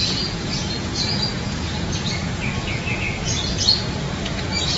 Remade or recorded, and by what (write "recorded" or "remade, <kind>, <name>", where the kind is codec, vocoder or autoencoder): remade, vocoder, Vocos